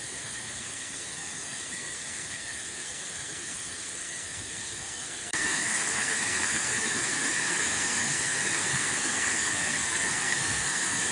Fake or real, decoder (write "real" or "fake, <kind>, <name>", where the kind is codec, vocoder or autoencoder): fake, codec, SNAC